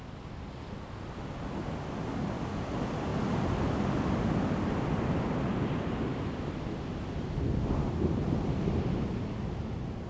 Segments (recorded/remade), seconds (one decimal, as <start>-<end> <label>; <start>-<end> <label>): 0.0-10.1 recorded